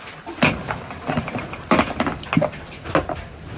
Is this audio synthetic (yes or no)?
no